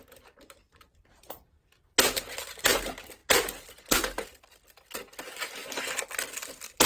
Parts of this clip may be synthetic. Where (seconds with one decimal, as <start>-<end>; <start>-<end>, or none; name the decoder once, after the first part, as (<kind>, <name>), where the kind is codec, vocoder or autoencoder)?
none